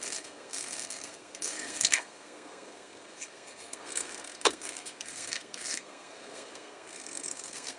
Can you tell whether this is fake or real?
fake